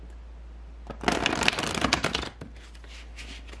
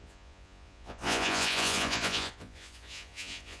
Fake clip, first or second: second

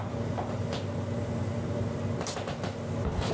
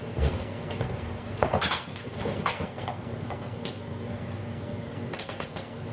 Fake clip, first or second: second